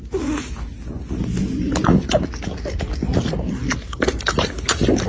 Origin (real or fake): real